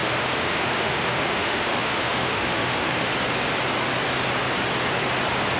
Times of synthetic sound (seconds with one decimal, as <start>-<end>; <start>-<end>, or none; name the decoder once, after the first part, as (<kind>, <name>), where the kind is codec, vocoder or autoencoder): 0.0-3.1 (autoencoder, DAC-VAE)